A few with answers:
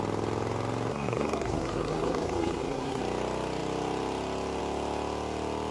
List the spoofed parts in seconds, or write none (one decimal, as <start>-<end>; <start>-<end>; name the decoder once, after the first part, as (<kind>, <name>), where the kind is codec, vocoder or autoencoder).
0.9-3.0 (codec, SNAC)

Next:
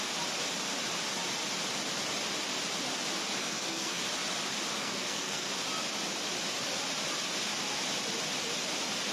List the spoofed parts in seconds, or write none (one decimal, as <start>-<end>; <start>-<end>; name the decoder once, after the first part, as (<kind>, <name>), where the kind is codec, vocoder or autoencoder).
3.4-4.0 (codec, SNAC); 4.8-5.5

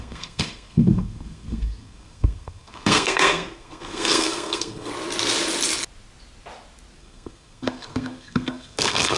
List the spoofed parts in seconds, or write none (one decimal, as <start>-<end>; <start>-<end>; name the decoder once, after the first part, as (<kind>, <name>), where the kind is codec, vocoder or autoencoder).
0.0-4.9 (codec, SNAC); 7.0-9.2

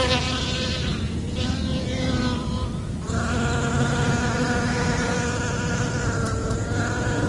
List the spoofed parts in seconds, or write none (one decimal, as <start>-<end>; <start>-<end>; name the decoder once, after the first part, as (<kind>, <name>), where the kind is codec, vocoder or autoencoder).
none

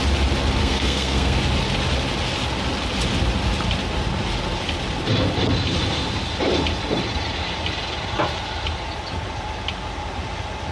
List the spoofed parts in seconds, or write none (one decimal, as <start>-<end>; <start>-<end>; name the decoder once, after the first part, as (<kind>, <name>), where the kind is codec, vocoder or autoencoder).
0.6-1.4 (codec, SNAC)

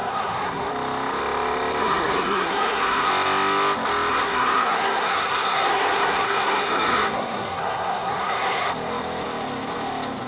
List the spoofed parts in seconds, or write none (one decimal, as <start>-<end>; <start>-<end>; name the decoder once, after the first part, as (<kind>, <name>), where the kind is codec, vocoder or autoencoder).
0.0-0.7 (codec, SNAC); 1.8-3.1; 4.1-8.7